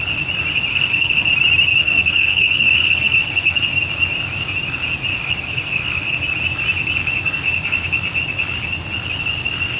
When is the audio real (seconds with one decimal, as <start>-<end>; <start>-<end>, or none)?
0.0-0.7; 1.3-1.8; 3.6-5.1; 6.2-9.8